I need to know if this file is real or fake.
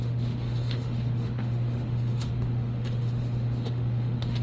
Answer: fake